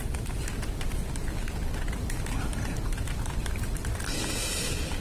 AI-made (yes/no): no